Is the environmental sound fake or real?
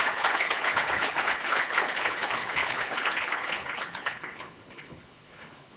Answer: fake